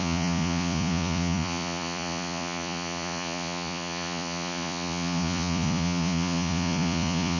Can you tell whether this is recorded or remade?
remade